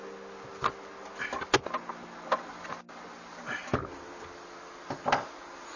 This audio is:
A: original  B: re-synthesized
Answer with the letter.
A